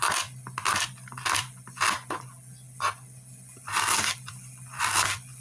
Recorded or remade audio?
recorded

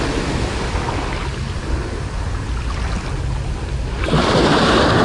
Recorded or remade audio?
recorded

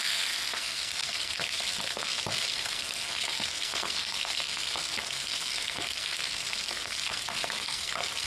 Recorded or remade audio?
remade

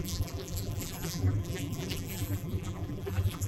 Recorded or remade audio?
remade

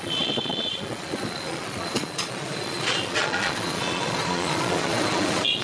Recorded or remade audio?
remade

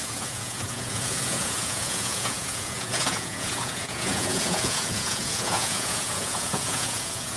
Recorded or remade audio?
remade